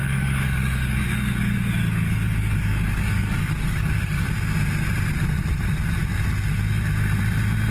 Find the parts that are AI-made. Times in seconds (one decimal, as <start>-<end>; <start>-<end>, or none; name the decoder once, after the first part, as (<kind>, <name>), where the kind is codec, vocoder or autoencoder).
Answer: 0.0-4.3 (codec, DAC)